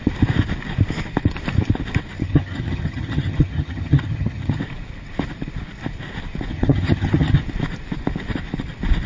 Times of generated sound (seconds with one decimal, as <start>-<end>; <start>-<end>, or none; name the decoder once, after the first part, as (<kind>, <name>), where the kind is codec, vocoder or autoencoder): 2.2-4.6 (vocoder, HiFi-GAN); 6.5-7.4